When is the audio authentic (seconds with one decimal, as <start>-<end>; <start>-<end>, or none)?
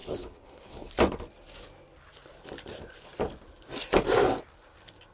0.9-5.1